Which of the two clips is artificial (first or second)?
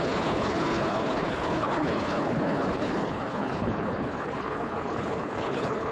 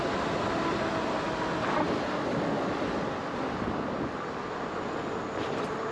first